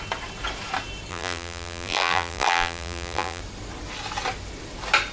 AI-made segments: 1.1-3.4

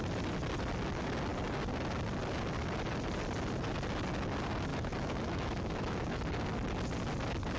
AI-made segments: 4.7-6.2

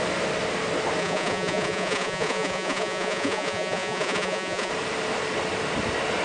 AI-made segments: 1.0-4.7